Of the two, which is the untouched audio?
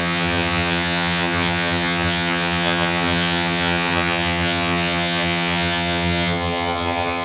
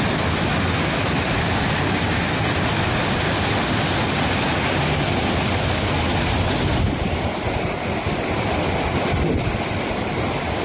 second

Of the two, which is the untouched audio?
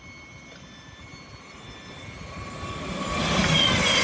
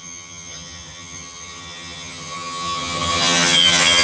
first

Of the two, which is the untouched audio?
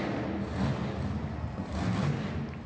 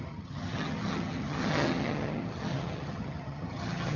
first